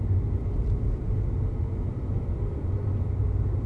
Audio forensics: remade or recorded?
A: recorded